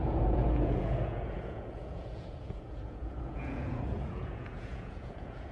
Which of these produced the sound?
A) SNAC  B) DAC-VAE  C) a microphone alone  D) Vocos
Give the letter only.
D